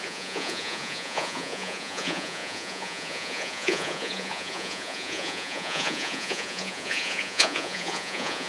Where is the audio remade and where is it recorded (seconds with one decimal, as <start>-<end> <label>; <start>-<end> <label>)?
0.0-8.5 remade